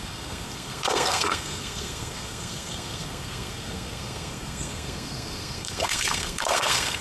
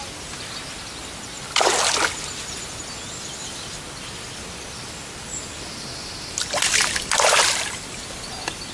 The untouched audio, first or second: second